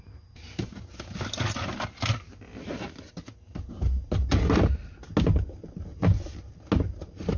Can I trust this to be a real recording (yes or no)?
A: yes